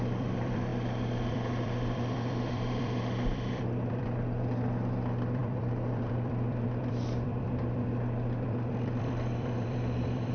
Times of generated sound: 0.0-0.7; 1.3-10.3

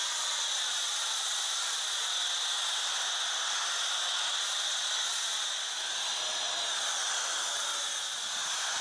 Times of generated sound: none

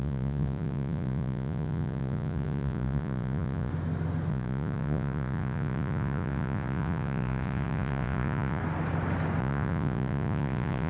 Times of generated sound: 0.0-3.7; 4.3-8.6; 9.4-10.9

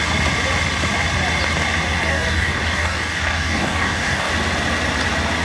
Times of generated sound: 2.1-4.3

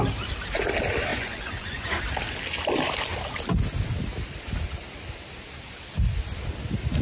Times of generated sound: 1.1-1.9

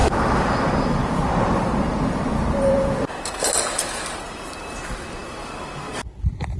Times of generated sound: 0.0-3.5